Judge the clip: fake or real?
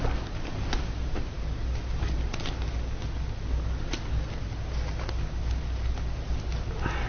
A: real